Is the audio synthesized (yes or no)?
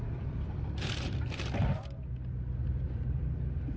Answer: yes